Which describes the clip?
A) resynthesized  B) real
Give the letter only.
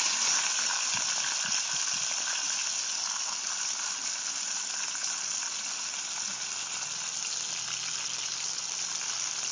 B